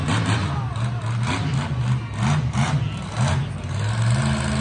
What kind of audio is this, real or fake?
real